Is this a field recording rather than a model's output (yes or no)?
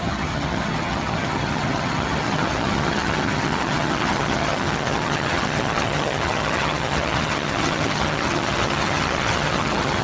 no